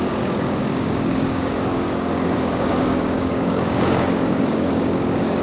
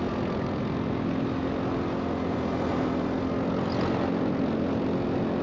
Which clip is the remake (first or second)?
first